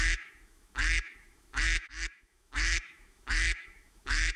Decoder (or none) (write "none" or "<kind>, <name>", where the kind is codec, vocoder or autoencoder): autoencoder, DAC-VAE